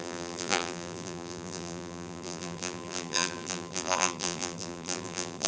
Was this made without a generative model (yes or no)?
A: no